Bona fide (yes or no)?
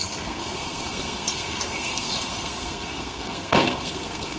no